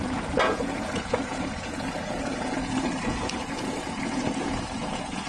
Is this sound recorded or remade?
remade